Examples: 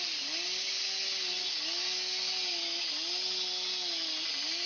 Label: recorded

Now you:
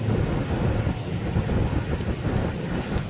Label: recorded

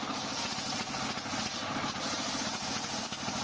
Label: recorded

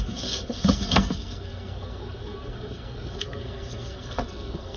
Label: remade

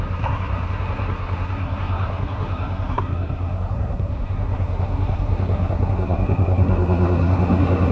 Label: remade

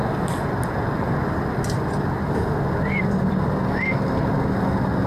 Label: recorded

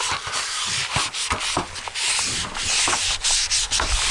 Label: recorded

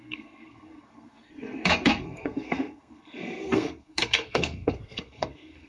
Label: remade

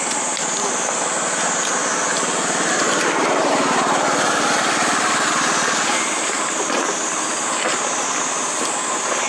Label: recorded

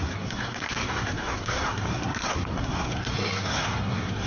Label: remade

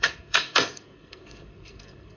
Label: remade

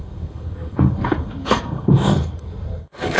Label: remade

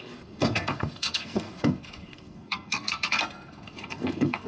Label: remade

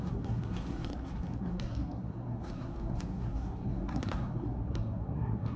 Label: remade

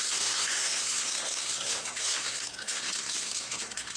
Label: remade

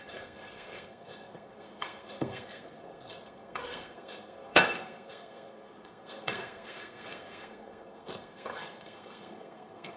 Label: remade